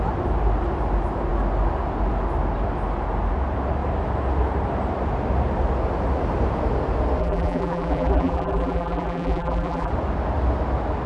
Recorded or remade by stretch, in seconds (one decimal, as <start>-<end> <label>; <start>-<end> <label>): 0.0-7.2 recorded; 7.2-9.9 remade; 9.9-11.1 recorded